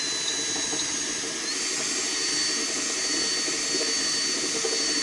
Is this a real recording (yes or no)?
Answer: yes